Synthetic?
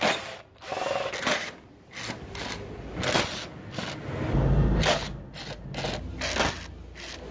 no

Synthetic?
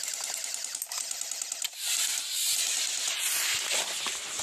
no